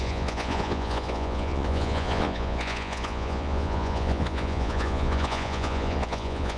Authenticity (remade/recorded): remade